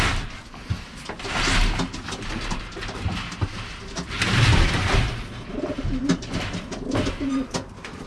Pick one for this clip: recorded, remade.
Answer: recorded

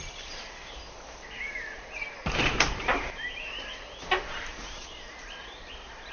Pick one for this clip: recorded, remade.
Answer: remade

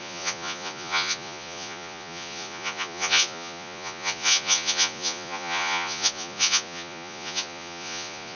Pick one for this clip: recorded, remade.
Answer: remade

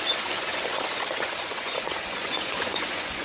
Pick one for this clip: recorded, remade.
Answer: remade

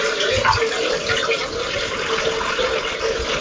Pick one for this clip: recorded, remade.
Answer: recorded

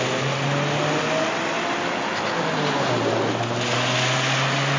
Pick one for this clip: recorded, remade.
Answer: recorded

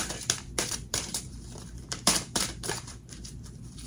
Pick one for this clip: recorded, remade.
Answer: remade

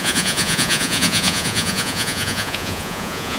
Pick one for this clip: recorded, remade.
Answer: remade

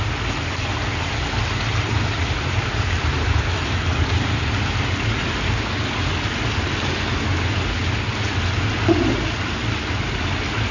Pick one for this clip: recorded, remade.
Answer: recorded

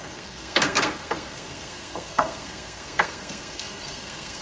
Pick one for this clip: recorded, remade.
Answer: remade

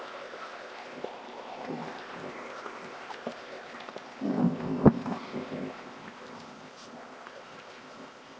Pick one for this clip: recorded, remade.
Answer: remade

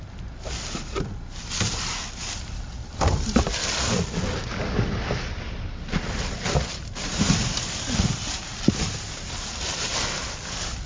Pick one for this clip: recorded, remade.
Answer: recorded